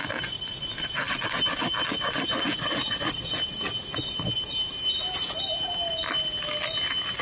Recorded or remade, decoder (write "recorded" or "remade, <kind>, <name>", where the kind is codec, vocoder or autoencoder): recorded